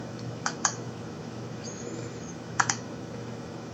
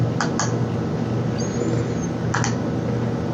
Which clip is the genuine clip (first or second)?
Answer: second